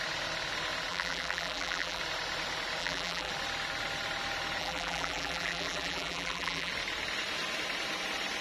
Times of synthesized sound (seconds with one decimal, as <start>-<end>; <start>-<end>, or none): 0.9-2.0; 2.8-3.3; 4.6-6.7